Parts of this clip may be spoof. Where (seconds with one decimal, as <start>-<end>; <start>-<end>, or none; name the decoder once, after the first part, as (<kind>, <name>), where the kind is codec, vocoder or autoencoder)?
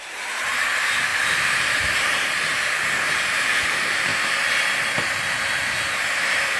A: 0.0-1.1 (vocoder, BigVGAN v2); 1.7-4.1; 6.1-6.6